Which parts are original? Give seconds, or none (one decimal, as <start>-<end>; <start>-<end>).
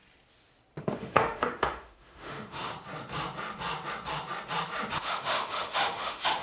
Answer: 0.0-0.8; 2.7-4.9